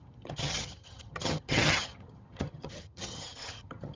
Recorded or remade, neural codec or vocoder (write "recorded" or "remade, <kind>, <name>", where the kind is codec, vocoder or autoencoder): remade, vocoder, HiFi-GAN